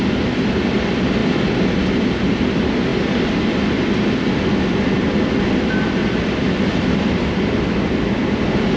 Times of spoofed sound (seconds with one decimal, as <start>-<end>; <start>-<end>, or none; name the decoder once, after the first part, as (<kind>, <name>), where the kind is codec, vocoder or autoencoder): 1.2-2.3 (vocoder, BigVGAN v2); 6.0-8.2